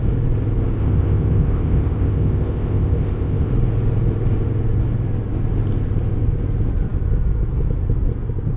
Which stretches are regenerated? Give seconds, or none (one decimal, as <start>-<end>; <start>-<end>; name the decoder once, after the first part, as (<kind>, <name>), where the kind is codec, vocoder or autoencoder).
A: 0.8-3.5 (codec, ZipCodec)